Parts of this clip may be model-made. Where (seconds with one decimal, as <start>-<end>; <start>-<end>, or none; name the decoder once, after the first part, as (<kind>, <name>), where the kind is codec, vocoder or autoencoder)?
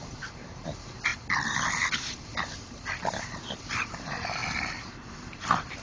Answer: 0.0-1.1 (vocoder, BigVGAN v2); 1.9-2.3; 3.9-4.4; 4.9-5.8